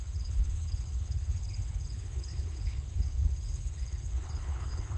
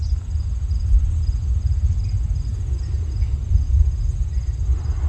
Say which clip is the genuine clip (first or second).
second